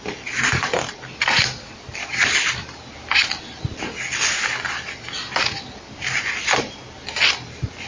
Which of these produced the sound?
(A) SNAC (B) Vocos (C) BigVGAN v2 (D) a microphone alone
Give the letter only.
D